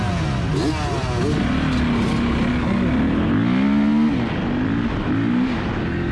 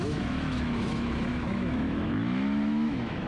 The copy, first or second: second